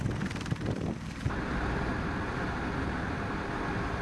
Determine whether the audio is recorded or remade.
recorded